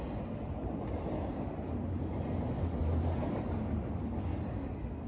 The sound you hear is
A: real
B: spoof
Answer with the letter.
A